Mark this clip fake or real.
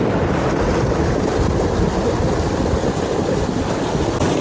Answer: real